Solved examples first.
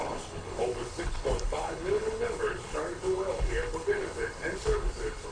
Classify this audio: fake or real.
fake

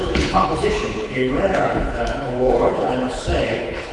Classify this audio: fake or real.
fake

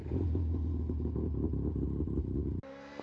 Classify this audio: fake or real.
real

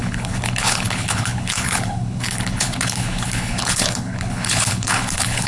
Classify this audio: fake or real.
fake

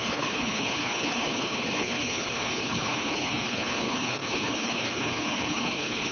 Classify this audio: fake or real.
fake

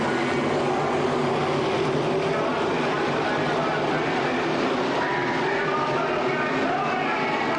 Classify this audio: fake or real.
real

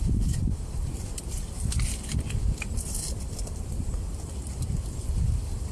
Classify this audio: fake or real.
real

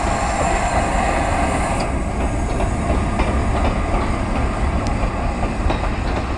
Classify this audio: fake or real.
real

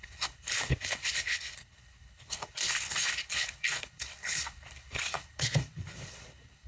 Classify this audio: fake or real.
fake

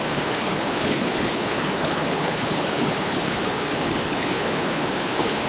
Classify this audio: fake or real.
fake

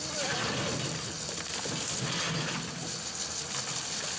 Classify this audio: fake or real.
real